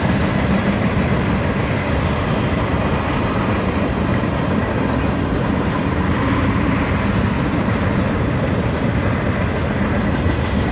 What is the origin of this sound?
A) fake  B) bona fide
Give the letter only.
B